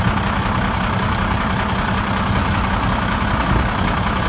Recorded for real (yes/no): yes